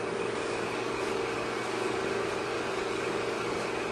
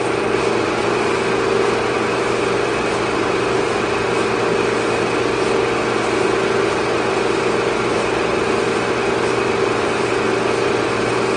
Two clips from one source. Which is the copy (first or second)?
first